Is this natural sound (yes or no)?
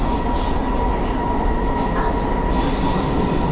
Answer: yes